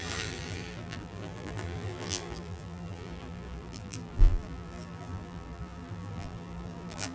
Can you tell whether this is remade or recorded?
remade